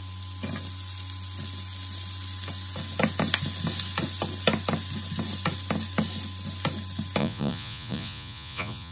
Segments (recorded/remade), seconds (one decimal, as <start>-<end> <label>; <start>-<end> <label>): 0.0-7.2 recorded; 7.2-8.9 remade